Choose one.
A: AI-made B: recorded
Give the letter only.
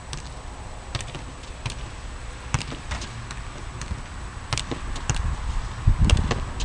B